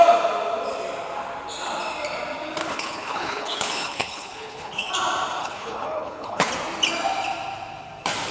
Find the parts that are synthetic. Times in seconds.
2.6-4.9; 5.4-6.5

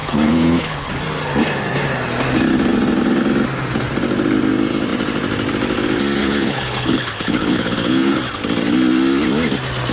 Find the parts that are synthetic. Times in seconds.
0.0-0.9; 6.2-8.2

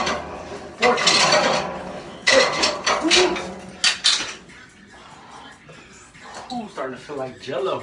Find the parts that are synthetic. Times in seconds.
1.8-2.4

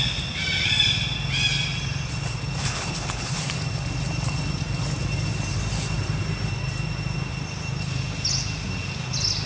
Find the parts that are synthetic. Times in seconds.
2.6-3.4

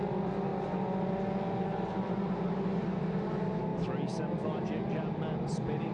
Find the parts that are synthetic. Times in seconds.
none

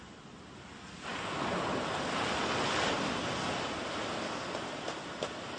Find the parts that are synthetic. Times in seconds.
none